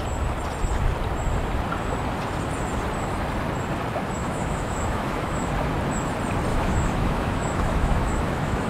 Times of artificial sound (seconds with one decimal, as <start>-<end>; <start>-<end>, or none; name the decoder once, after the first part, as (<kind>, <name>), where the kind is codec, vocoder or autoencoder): 4.2-5.5 (autoencoder, DAC-VAE); 6.5-8.7